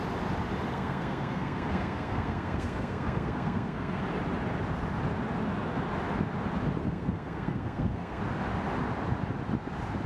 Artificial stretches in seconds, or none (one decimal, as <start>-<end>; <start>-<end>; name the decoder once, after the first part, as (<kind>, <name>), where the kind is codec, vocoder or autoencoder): 0.7-4.0 (codec, SNAC); 6.8-8.2